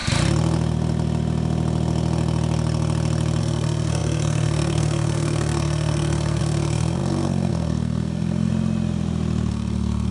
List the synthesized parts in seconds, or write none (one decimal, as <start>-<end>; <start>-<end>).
3.4-8.5; 9.5-10.1